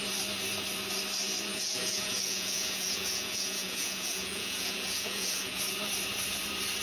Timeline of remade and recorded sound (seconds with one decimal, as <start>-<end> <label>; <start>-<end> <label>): 0.0-1.5 recorded; 1.5-5.6 remade; 5.6-6.8 recorded